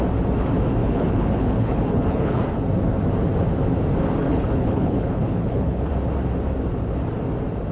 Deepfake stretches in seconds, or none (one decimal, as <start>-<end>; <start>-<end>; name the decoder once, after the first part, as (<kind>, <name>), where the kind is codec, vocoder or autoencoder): 0.8-2.4 (codec, HILCodec); 4.2-5.9